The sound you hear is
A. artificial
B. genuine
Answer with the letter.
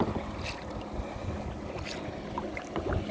B